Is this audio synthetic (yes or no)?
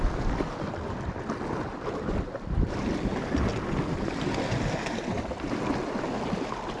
no